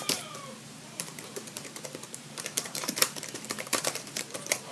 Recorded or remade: remade